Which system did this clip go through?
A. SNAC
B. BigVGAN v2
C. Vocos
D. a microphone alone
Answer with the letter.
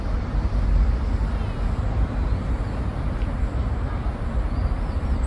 D